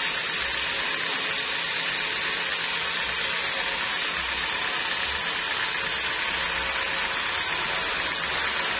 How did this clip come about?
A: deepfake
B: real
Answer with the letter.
B